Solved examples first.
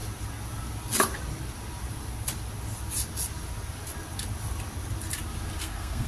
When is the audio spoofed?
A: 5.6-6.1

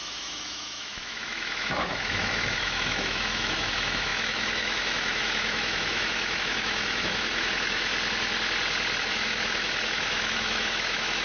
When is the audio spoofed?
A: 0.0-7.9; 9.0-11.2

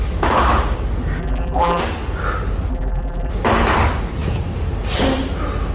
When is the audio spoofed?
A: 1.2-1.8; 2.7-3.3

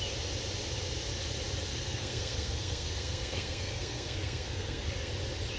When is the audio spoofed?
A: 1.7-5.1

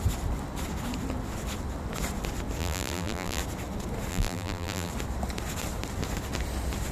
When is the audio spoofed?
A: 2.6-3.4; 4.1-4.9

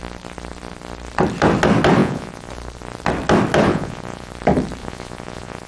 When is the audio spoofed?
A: 2.0-2.5; 3.7-4.3; 4.8-5.7